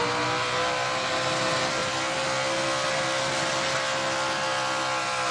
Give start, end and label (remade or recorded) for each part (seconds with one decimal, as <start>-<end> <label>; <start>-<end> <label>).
0.0-5.3 recorded